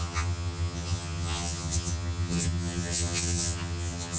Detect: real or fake fake